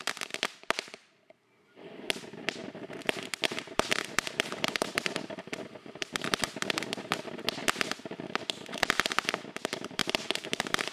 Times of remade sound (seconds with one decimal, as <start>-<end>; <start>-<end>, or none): 2.6-6.4; 10.0-10.5